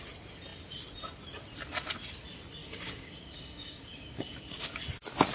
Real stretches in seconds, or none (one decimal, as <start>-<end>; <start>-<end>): 0.0-2.6; 4.8-5.3